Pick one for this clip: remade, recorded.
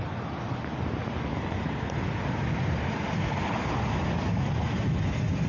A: recorded